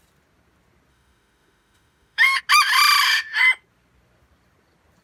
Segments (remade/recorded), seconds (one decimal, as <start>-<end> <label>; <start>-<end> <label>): 0.0-0.9 recorded; 0.9-2.4 remade; 2.4-5.0 recorded